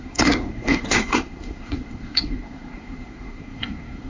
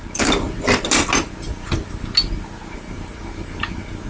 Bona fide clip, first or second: second